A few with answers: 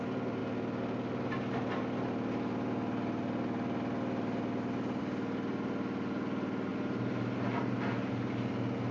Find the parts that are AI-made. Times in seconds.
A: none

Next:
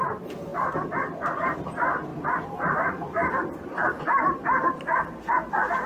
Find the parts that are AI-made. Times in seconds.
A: 2.1-5.3 (vocoder, BigVGAN v2)

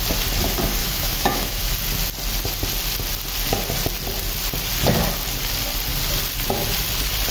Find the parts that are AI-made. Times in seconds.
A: 0.8-1.7 (autoencoder, DAC-VAE)

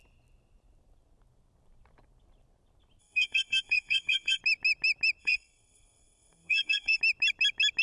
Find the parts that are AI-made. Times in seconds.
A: 3.0-4.4 (codec, SNAC); 5.2-7.0

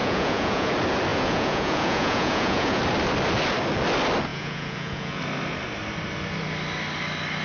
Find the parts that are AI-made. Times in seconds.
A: 0.0-0.7 (vocoder, Vocos); 1.1-2.8; 4.3-5.2

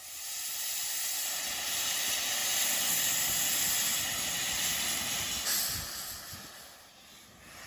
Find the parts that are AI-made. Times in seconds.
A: none

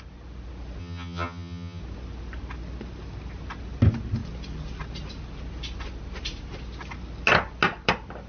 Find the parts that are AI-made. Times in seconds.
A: 0.8-1.8 (vocoder, HiFi-GAN)

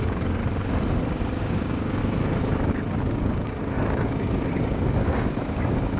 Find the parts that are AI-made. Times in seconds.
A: 0.0-0.4 (codec, DAC); 1.4-2.0; 3.1-6.0